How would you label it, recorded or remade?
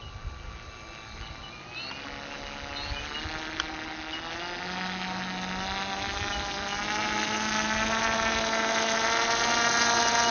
recorded